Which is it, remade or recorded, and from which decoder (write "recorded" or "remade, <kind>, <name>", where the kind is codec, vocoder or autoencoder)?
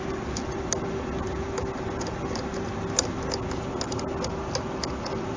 recorded